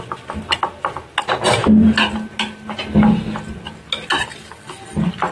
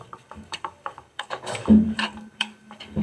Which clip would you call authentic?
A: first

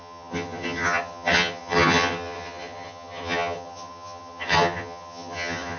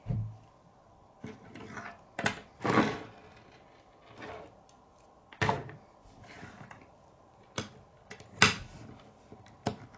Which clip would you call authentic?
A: second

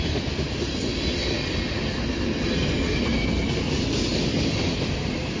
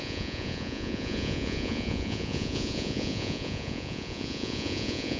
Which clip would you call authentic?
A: first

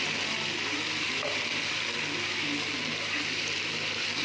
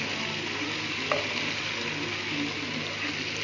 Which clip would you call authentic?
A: second